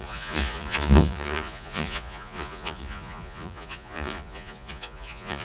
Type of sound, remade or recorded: remade